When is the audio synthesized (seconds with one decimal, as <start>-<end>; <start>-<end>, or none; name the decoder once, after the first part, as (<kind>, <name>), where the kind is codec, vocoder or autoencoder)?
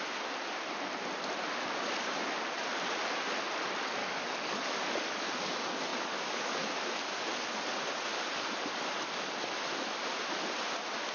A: 4.0-5.3 (codec, DAC); 5.9-6.7